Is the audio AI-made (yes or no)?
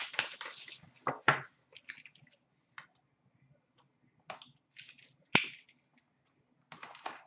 no